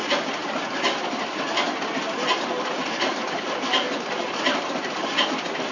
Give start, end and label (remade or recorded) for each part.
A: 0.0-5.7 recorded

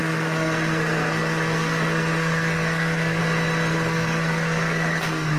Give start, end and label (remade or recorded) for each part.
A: 0.0-3.2 remade; 3.2-3.7 recorded; 3.7-5.4 remade

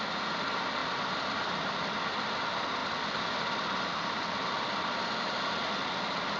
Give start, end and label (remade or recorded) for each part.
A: 0.0-0.8 recorded; 0.8-2.4 remade; 2.4-2.8 recorded; 2.8-3.4 remade; 3.4-6.4 recorded

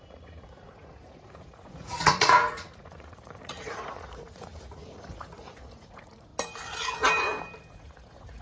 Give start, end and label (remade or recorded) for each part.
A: 0.0-6.3 remade; 6.3-7.6 recorded; 7.6-8.4 remade

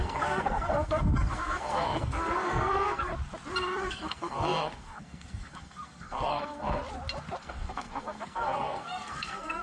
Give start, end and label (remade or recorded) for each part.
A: 0.0-3.1 remade; 3.1-3.8 recorded; 3.8-6.8 remade; 6.8-7.4 recorded; 7.4-9.6 remade

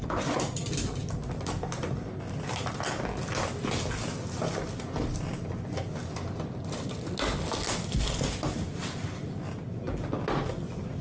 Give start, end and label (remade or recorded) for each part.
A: 0.0-11.0 recorded